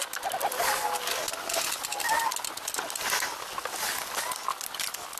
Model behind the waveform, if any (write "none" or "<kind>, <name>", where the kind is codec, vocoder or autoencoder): none